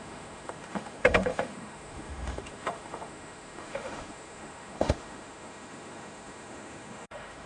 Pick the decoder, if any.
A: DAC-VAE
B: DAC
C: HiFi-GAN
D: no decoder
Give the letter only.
A